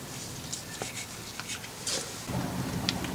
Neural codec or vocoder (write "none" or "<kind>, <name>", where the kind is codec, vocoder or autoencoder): none